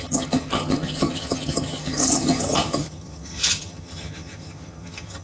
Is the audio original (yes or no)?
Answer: no